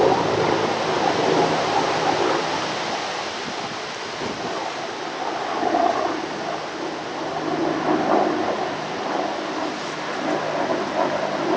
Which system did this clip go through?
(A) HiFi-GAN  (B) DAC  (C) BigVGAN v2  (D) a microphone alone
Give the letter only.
D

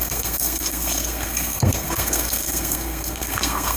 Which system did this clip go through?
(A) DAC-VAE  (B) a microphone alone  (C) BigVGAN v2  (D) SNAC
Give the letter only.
D